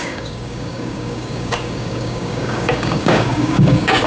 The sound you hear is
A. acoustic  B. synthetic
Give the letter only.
B